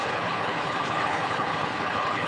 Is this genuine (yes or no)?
no